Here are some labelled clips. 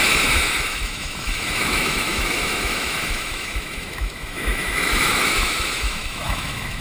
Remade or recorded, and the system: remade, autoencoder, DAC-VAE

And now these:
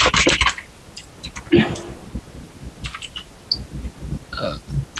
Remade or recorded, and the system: recorded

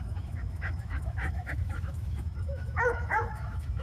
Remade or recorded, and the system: remade, autoencoder, DAC-VAE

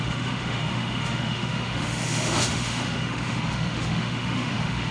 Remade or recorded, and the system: remade, autoencoder, DAC-VAE